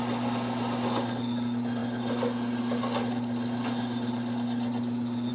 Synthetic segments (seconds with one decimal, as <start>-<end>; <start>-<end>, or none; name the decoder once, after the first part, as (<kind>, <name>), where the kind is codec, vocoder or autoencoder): none